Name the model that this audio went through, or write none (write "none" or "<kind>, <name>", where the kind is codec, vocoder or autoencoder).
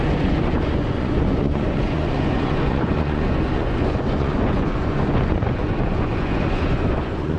vocoder, Vocos